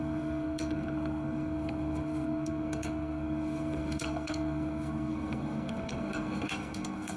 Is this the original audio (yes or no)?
no